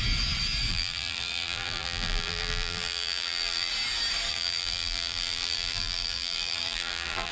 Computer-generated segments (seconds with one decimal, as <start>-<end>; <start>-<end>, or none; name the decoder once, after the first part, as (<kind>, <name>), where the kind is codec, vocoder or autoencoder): 0.7-3.7 (vocoder, BigVGAN v2); 4.3-7.3